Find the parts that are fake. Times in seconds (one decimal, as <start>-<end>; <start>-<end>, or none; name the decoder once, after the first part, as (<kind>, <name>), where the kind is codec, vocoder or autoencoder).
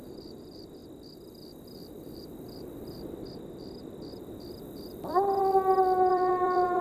0.0-0.8 (vocoder, BigVGAN v2); 1.6-5.4; 6.1-6.8